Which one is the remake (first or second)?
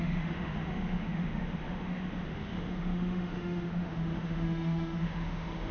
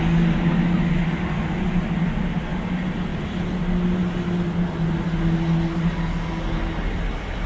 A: first